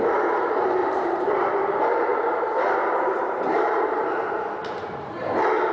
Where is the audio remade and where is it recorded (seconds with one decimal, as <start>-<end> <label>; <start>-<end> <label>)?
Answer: 0.0-0.8 recorded; 0.8-1.5 remade; 1.5-2.1 recorded; 2.1-4.3 remade; 4.3-5.7 recorded